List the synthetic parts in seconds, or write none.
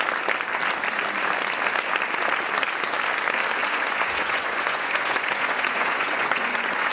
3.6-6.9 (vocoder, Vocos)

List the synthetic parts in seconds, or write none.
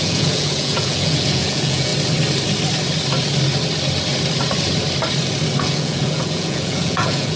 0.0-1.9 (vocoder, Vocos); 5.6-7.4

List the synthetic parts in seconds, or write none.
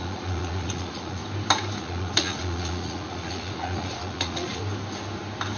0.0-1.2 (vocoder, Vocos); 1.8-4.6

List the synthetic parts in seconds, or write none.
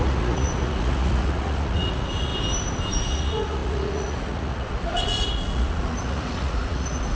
0.0-2.3 (vocoder, Vocos); 2.9-7.1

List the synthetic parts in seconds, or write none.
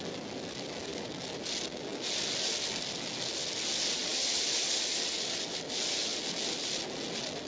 none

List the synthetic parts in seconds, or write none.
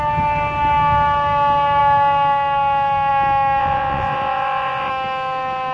3.6-4.9 (vocoder, Vocos)